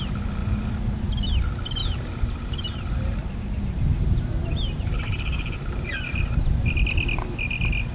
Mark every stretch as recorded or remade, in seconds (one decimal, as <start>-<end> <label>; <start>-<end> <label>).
0.0-0.4 recorded; 0.4-1.1 remade; 1.1-1.8 recorded; 1.8-6.4 remade; 6.4-7.9 recorded